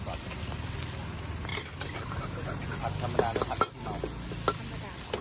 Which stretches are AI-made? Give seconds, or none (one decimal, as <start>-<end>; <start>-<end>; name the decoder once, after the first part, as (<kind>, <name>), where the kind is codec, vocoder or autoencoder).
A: none